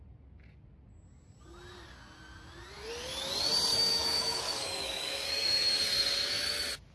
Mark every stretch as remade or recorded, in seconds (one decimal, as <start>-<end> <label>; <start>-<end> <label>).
0.0-3.7 recorded; 3.7-5.8 remade; 5.8-6.9 recorded